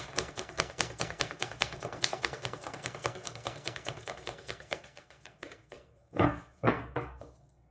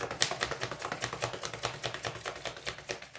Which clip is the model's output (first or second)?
first